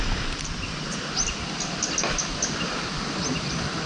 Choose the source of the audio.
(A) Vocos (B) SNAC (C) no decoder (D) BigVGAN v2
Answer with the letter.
C